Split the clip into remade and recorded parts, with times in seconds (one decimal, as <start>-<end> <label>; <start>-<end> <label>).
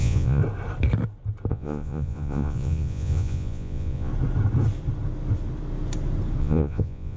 0.0-0.4 remade; 0.4-1.5 recorded; 1.5-4.1 remade; 4.1-6.4 recorded; 6.4-7.2 remade